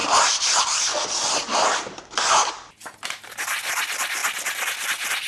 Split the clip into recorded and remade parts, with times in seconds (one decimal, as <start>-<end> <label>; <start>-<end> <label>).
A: 0.0-5.3 recorded